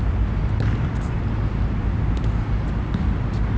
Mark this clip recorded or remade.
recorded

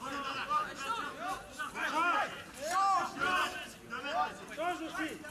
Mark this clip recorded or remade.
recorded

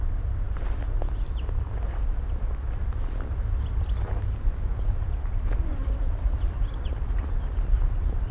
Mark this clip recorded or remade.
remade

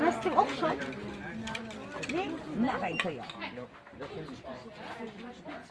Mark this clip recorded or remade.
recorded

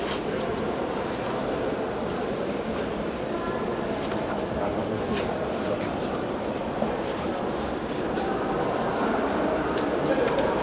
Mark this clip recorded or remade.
remade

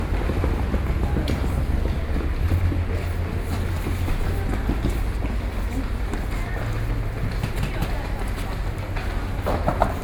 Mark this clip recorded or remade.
recorded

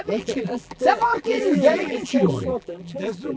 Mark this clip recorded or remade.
remade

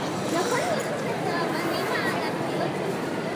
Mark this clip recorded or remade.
recorded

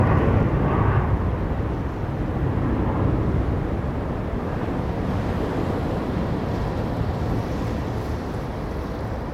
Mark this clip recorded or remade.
recorded